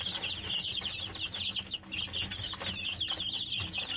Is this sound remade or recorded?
recorded